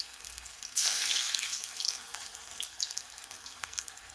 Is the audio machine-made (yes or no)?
yes